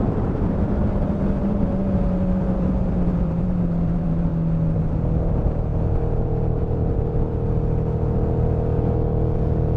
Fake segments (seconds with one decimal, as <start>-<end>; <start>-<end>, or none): 0.0-4.3; 5.0-7.0